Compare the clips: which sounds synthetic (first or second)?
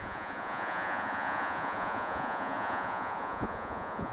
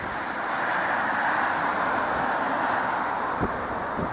first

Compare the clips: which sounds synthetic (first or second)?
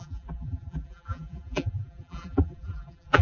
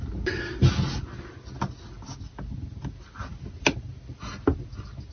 first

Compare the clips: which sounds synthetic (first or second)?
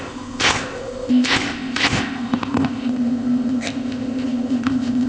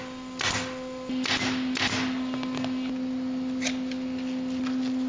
first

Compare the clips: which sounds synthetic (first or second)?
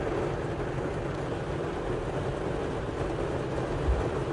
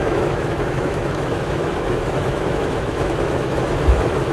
second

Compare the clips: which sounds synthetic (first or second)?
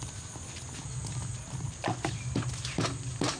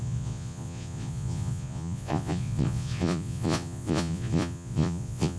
second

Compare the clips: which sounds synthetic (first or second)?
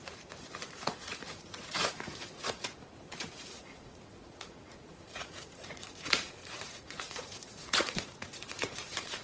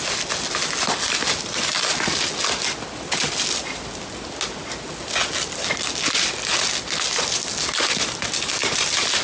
first